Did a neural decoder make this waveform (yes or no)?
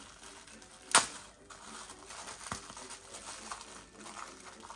no